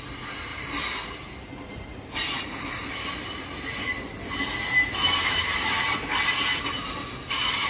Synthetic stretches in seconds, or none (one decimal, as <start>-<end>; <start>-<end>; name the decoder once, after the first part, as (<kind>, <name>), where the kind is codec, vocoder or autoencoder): none